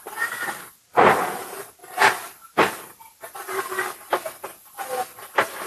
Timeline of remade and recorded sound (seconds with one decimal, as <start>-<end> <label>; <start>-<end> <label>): 0.0-1.8 remade; 1.8-5.2 recorded; 5.2-5.7 remade